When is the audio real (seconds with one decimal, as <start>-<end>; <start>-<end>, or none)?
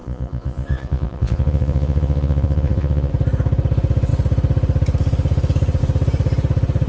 3.1-6.9